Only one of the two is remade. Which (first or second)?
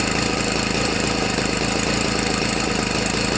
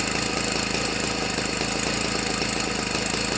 first